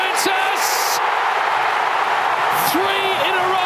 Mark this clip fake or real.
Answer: real